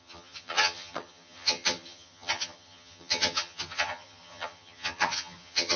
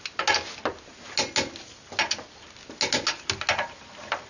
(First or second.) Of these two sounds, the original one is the second